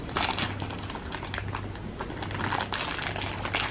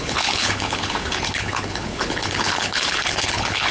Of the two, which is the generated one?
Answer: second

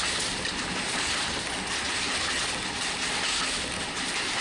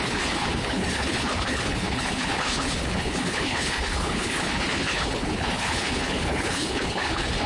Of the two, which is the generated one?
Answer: second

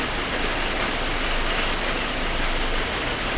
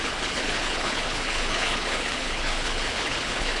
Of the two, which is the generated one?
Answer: second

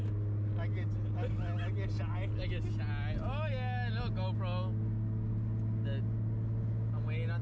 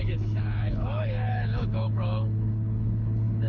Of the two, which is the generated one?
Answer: second